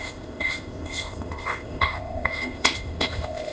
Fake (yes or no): yes